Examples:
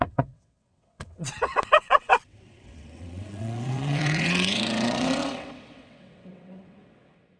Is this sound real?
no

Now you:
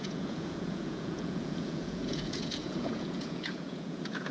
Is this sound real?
no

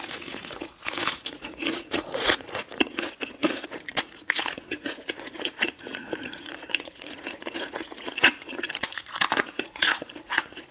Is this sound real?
no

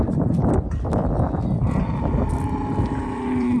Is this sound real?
yes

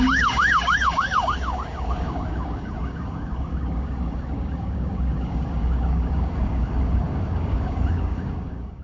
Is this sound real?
no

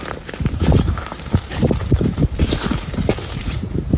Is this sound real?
no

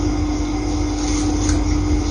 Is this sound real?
yes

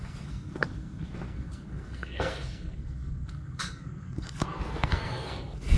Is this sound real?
no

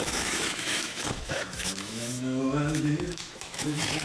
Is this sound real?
no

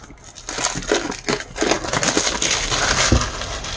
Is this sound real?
yes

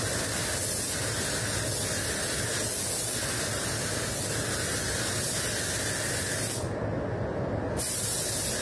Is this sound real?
yes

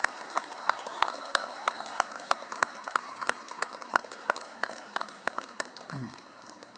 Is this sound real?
no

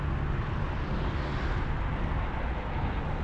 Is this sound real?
yes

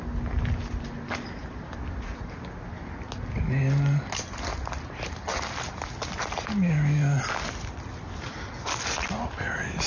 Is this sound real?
yes